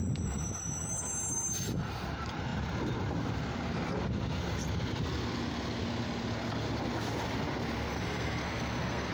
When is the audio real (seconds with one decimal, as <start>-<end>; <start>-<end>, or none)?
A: 0.0-7.9